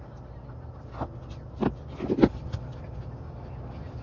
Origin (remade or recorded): recorded